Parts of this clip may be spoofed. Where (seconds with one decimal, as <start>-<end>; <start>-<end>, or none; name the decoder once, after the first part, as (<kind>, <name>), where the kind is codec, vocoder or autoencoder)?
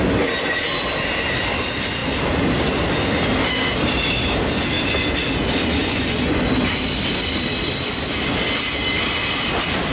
5.8-6.4 (vocoder, Vocos)